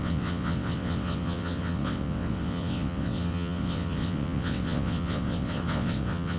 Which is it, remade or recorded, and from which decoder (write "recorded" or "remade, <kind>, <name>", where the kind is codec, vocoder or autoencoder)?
remade, vocoder, WaveNeXt